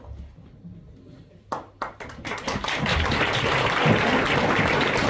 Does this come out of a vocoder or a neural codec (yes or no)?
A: no